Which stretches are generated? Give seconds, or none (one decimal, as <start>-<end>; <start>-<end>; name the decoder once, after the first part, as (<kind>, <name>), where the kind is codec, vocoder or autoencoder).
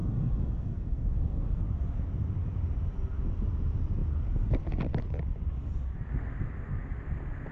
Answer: 0.0-1.6 (codec, SNAC)